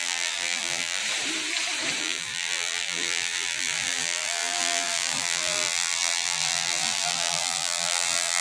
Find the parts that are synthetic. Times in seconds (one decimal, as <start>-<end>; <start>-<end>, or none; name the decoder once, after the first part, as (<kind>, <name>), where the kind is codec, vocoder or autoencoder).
0.0-1.0 (vocoder, BigVGAN v2); 2.0-8.4